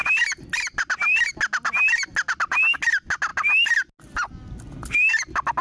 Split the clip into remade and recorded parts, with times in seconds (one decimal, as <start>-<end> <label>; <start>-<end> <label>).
0.0-5.6 recorded